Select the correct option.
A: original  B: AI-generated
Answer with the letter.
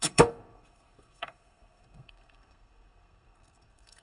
B